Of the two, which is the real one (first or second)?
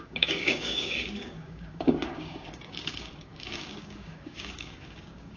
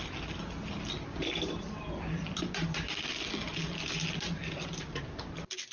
second